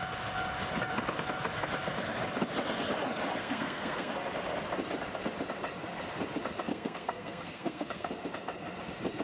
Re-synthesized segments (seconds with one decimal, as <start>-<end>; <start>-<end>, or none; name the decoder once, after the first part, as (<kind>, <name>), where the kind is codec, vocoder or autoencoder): 3.4-4.1 (codec, SNAC); 6.7-8.1